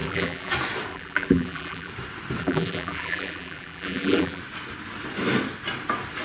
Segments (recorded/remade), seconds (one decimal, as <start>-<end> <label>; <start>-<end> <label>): 0.0-0.5 remade; 0.5-0.9 recorded; 0.9-1.9 remade; 1.9-2.4 recorded; 2.4-4.4 remade; 4.4-6.2 recorded